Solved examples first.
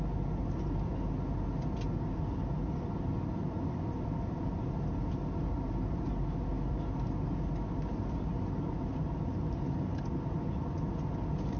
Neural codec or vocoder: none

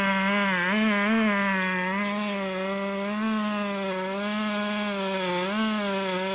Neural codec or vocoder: none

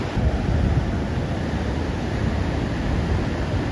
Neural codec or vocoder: none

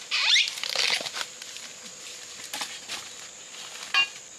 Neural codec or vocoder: none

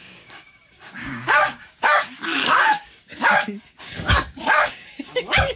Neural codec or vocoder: codec, DAC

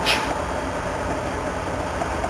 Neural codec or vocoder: none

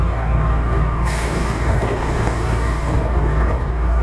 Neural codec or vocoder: codec, DAC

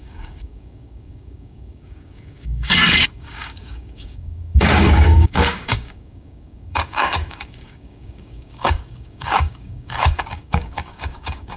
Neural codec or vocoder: codec, DAC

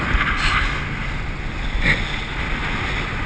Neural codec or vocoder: none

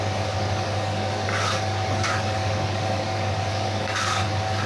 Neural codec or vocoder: codec, DAC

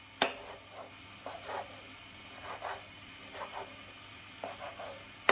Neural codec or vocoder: none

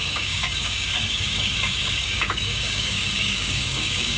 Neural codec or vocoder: codec, DAC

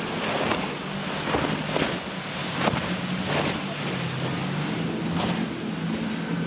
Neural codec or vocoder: none